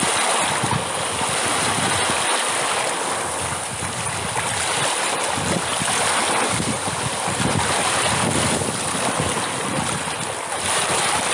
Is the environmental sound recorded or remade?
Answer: recorded